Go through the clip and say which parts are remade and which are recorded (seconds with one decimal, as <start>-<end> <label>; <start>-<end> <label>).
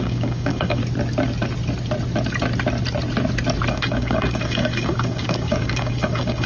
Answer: 0.0-0.8 remade; 0.8-3.7 recorded; 3.7-6.5 remade